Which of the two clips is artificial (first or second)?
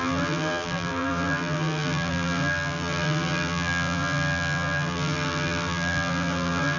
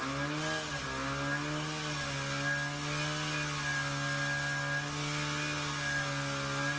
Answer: first